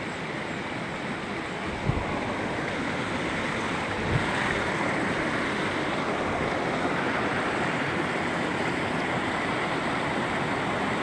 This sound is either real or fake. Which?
real